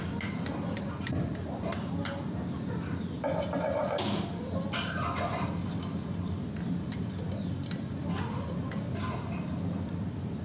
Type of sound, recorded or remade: recorded